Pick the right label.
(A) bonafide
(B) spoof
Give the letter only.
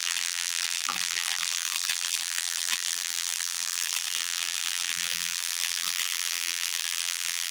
B